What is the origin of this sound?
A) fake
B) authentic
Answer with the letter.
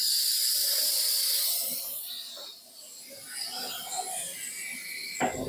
B